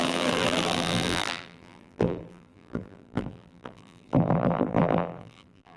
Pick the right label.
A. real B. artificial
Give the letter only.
B